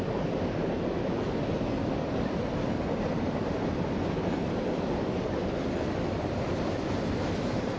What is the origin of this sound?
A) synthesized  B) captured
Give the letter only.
B